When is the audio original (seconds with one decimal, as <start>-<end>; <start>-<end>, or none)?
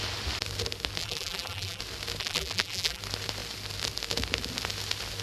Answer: 0.0-1.0; 1.8-2.2; 3.0-5.2